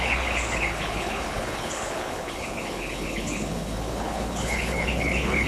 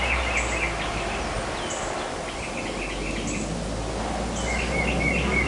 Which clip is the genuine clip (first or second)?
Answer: second